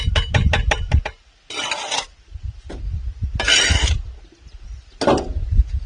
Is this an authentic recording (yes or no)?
yes